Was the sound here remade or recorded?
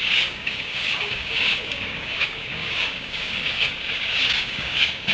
remade